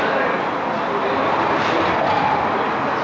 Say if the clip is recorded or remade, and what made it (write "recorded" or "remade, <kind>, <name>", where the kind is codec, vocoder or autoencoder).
recorded